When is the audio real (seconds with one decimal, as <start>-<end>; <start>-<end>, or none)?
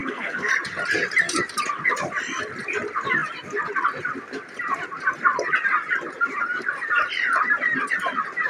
0.5-8.5